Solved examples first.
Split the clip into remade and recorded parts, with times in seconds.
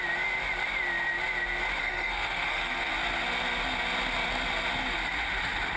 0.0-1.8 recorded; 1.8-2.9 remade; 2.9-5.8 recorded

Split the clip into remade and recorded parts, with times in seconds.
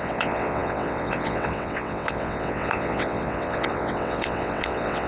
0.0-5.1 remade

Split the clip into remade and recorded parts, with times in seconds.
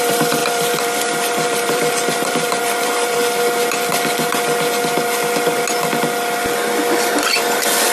0.0-3.2 remade; 3.2-7.2 recorded; 7.2-7.9 remade